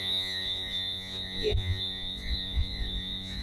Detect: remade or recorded remade